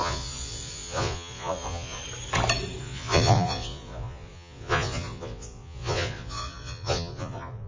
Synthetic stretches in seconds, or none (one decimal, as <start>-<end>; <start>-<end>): 0.0-2.0; 2.8-7.7

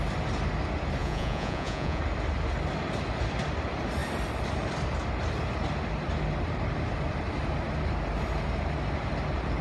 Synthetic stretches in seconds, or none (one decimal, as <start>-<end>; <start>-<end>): 1.0-2.0